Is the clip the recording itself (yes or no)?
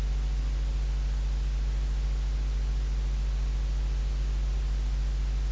yes